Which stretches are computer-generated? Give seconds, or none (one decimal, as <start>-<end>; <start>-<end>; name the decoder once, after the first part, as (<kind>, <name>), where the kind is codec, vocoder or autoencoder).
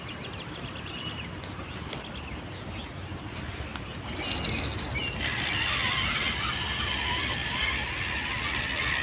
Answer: none